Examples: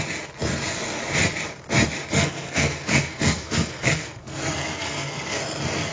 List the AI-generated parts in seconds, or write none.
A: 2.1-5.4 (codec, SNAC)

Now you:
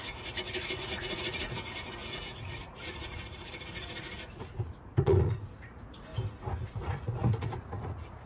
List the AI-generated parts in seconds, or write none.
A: 0.0-6.1 (vocoder, Vocos); 6.7-8.3

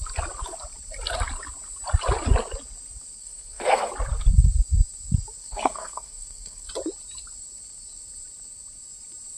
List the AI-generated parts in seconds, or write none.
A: 3.2-3.9 (codec, SNAC); 5.4-6.7

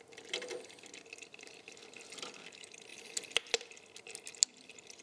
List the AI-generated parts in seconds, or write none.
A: none

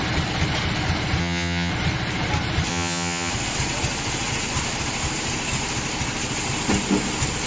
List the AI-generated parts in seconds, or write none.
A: 1.2-1.7 (vocoder, HiFi-GAN); 2.7-3.3

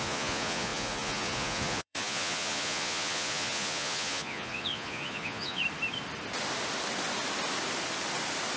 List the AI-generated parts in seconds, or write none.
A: 0.0-5.6 (vocoder, Vocos)

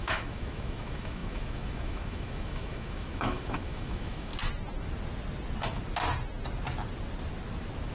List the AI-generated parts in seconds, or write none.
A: 0.0-4.3 (autoencoder, DAC-VAE)